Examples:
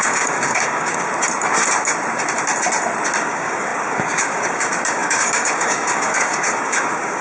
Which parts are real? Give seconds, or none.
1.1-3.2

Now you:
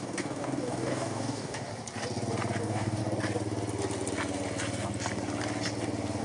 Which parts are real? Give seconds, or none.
1.7-2.6; 3.0-6.2